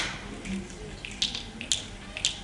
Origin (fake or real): real